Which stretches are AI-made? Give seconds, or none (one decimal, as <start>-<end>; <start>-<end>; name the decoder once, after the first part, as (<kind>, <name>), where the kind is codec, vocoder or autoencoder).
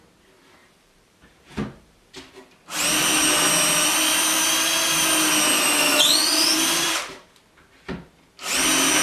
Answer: 0.6-2.1 (vocoder, BigVGAN v2); 6.3-7.4